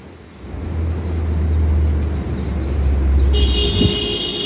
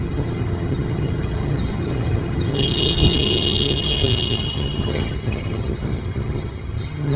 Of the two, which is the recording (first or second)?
first